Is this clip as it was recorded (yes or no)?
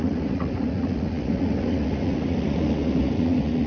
no